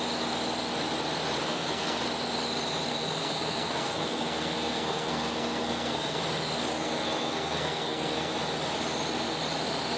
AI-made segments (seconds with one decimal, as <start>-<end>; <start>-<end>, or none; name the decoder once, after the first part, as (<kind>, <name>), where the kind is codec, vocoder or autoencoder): 1.4-2.0 (codec, SNAC); 2.9-6.2; 6.7-8.3